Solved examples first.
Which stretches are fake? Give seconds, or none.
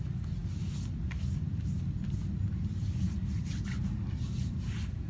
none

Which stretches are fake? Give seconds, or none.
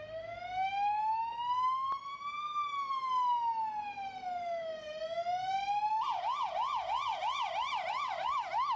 2.1-3.0 (vocoder, BigVGAN v2); 7.1-7.9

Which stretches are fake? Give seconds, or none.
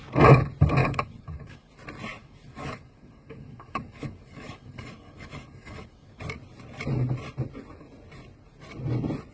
0.8-1.7 (autoencoder, DAC-VAE); 2.2-6.2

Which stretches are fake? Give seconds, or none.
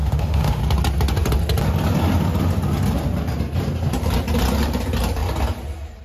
0.0-0.6 (autoencoder, DAC-VAE)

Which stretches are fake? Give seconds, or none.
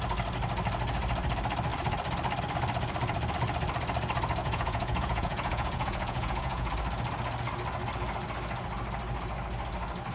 4.4-6.7 (vocoder, Vocos)